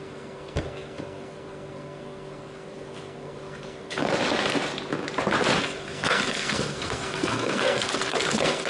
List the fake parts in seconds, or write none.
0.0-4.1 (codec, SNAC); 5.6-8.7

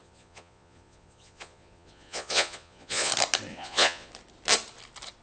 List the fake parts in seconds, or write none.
0.0-3.1 (vocoder, Vocos); 3.5-4.1

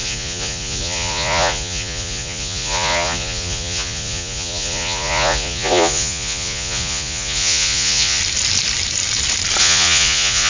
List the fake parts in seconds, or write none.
0.0-8.2 (vocoder, Vocos); 9.6-10.5

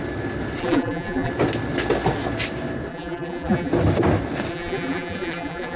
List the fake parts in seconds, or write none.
0.6-1.3 (vocoder, BigVGAN v2); 2.9-3.7; 4.5-5.8

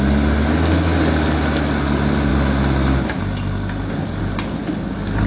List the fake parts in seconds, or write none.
none